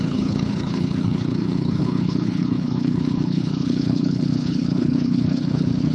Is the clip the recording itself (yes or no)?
no